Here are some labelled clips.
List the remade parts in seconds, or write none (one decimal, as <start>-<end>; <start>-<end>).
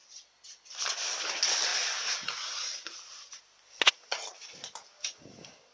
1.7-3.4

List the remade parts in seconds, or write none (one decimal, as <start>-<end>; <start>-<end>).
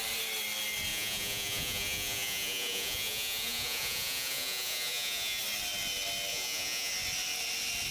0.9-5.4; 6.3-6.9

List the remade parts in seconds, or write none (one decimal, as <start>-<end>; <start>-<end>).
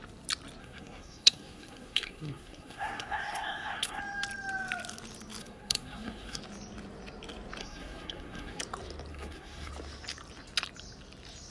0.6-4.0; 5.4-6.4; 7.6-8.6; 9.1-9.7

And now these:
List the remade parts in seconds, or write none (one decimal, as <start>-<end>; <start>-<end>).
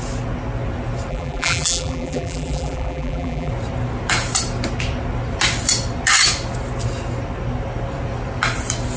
1.1-3.5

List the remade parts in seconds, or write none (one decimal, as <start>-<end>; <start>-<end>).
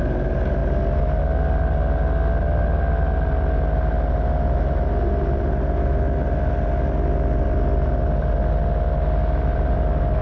none